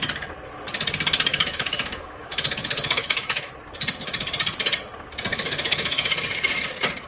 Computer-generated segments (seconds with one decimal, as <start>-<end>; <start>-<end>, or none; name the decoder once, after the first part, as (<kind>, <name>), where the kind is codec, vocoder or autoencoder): 1.3-3.5 (autoencoder, DAC-VAE); 5.3-6.1